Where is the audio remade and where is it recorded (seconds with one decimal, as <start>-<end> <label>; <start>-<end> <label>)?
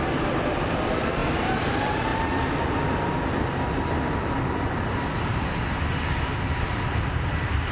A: 0.0-2.1 remade; 2.1-6.7 recorded; 6.7-7.7 remade